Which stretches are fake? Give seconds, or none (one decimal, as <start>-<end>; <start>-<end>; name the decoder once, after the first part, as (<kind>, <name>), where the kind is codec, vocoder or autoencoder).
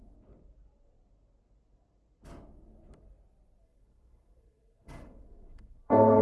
3.6-6.2 (codec, SNAC)